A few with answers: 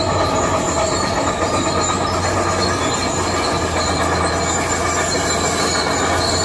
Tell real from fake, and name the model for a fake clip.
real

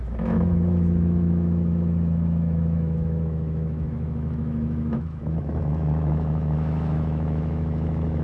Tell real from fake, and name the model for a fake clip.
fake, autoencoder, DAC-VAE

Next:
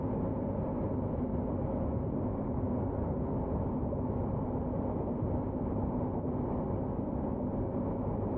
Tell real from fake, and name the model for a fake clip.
real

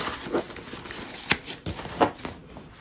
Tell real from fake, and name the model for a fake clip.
real